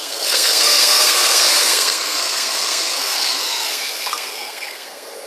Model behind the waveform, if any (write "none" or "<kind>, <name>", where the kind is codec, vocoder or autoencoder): codec, SNAC